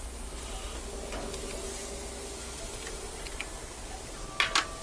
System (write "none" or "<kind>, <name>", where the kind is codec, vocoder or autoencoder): none